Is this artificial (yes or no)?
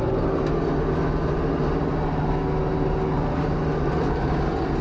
no